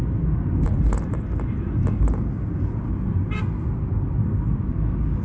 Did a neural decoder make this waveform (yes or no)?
no